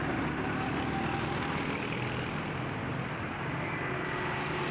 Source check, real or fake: real